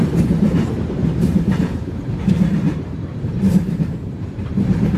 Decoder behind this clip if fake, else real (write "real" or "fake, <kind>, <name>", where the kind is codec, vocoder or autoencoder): fake, vocoder, BigVGAN v2